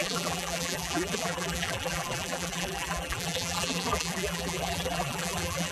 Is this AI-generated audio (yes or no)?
yes